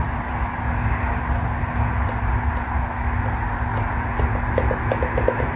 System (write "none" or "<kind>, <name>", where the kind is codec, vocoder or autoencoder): none